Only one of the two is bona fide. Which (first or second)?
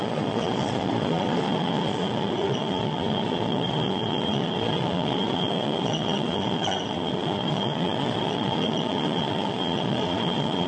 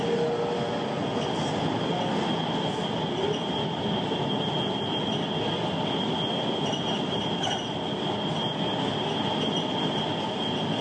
second